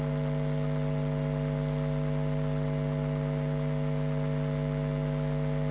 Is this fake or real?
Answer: real